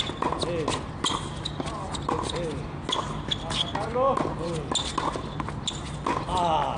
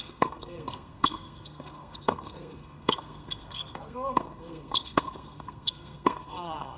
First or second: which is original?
first